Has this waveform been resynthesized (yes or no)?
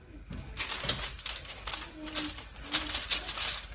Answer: no